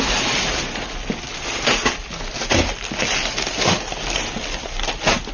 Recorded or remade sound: recorded